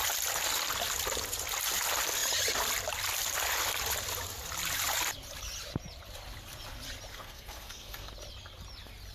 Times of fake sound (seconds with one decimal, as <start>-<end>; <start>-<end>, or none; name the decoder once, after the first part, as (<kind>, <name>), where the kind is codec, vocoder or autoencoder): 7.1-8.1 (codec, SNAC)